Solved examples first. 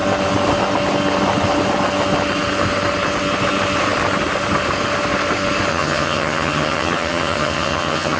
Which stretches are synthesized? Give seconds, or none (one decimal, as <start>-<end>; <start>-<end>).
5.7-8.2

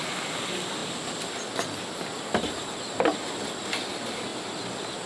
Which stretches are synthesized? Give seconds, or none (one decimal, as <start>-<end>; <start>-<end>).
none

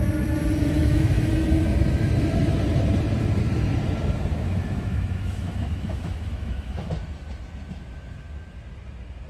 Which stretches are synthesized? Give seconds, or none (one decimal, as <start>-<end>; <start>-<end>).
0.6-1.3; 4.3-6.9